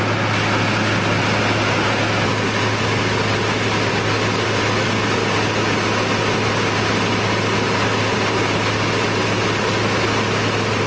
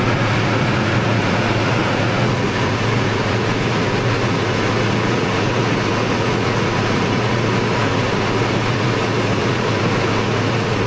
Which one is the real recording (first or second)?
first